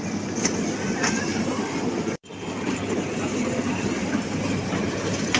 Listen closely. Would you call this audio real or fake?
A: fake